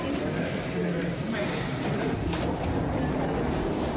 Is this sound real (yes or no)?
yes